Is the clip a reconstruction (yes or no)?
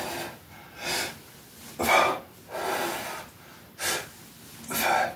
no